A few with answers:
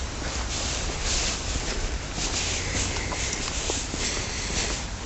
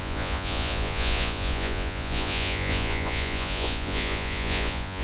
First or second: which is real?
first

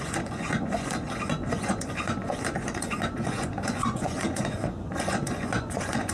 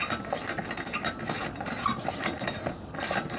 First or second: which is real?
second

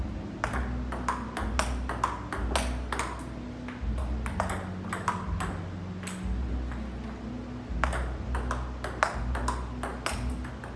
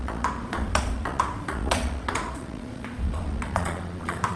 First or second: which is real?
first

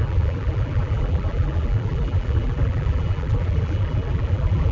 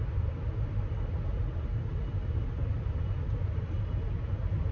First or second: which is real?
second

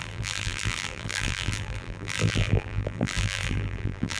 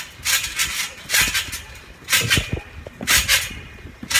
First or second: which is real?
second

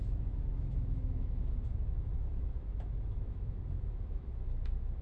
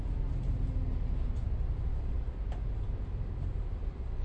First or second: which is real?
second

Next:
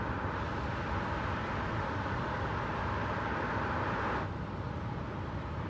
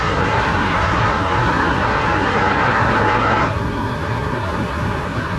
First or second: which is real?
first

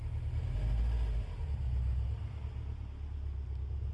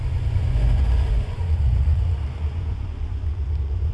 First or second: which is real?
first